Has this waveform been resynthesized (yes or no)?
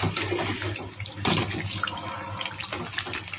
no